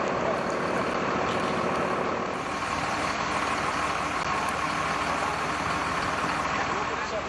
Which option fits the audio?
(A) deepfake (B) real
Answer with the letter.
B